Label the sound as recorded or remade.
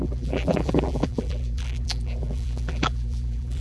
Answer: remade